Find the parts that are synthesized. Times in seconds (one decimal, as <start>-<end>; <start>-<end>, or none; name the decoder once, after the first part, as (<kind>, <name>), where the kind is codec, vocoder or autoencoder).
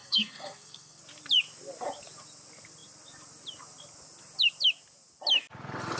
0.0-1.0 (codec, SNAC)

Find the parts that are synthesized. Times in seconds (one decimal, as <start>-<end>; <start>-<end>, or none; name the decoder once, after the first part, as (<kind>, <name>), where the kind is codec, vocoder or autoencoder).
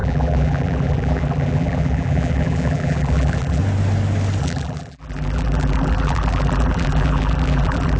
0.0-3.6 (vocoder, BigVGAN v2); 4.4-8.0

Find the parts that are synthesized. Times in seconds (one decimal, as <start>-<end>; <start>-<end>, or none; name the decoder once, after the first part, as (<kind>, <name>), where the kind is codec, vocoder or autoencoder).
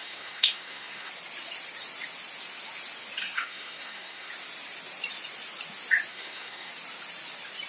0.0-1.1 (codec, SNAC); 3.2-4.3; 6.1-6.7